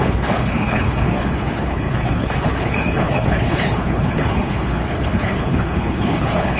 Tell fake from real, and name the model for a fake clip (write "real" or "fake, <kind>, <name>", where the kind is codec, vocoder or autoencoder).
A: fake, codec, HILCodec